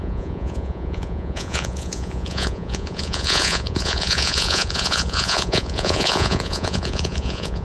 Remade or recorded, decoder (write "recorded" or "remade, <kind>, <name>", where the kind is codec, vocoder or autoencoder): remade, vocoder, Vocos